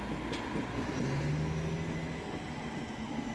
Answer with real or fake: real